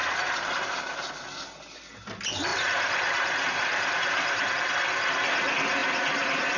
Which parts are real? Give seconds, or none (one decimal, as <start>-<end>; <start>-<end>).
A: 1.1-2.5; 4.5-5.8